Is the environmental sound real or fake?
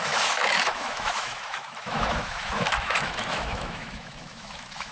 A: fake